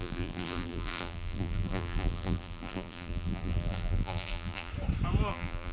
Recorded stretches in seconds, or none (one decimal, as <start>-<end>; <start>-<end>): 4.7-5.3